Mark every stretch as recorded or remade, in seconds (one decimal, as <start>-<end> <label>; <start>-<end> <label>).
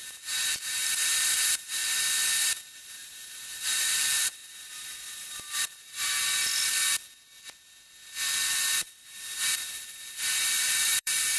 0.0-1.8 remade; 1.8-2.8 recorded; 2.8-6.2 remade; 6.2-8.8 recorded; 8.8-11.4 remade